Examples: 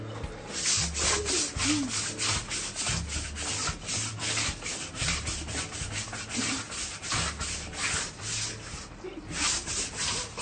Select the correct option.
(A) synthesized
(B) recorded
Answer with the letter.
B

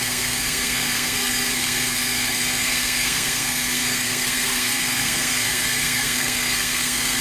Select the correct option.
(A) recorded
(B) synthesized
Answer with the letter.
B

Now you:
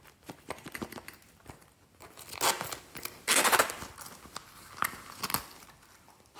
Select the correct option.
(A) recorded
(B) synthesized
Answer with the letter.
A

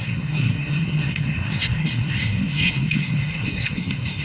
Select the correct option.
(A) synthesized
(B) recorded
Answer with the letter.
A